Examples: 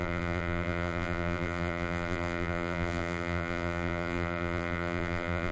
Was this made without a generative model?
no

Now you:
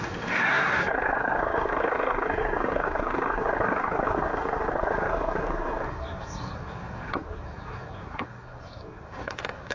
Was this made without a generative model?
no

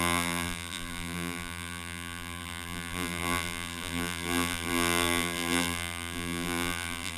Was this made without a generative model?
no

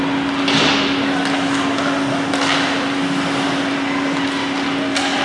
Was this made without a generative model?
yes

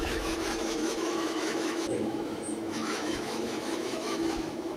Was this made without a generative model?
no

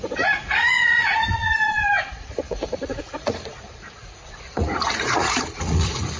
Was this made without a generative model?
no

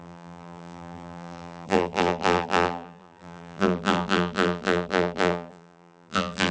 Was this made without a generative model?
no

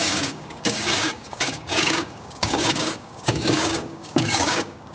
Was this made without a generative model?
no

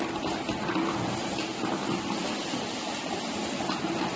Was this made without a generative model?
yes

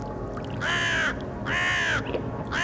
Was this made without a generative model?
yes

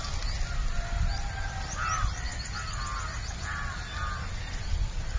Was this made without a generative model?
yes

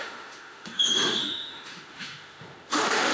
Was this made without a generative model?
no